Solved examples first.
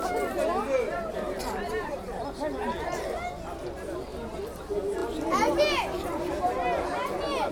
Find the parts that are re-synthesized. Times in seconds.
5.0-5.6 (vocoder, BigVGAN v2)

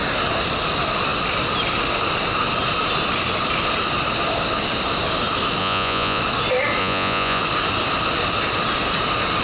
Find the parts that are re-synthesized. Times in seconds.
5.6-6.2 (vocoder, Vocos); 6.8-7.4

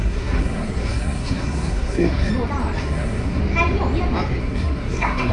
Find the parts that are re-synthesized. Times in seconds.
0.0-2.3 (codec, SNAC); 2.8-3.4; 4.4-5.3

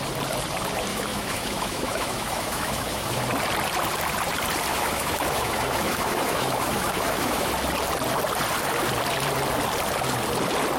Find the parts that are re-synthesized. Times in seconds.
0.9-3.2 (autoencoder, DAC-VAE); 4.7-7.5

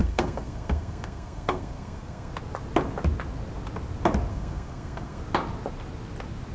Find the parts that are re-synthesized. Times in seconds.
0.0-2.3 (codec, SNAC); 4.3-5.2

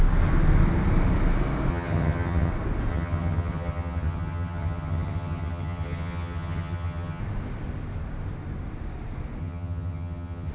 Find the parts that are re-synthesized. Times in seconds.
1.7-2.5 (vocoder, HiFi-GAN); 2.9-7.2; 9.4-10.5